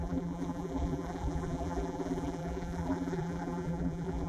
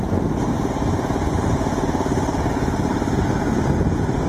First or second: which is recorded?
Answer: second